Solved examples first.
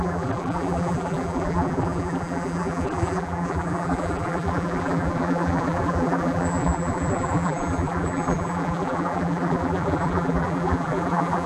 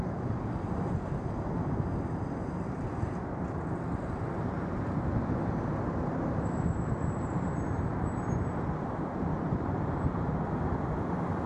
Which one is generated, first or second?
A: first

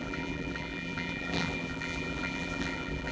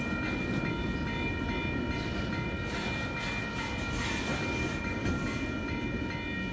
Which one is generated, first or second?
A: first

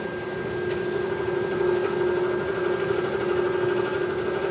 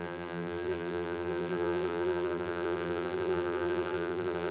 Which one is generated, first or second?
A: second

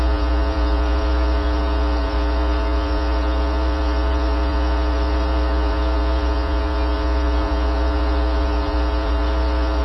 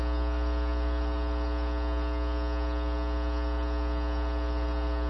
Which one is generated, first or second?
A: first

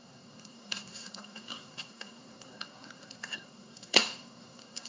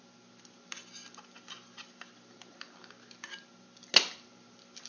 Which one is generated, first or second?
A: first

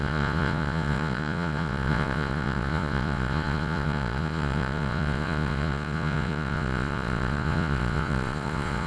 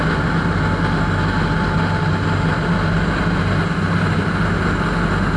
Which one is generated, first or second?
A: first